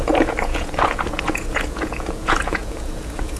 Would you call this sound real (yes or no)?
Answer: no